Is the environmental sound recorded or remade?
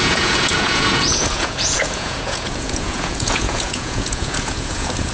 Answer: remade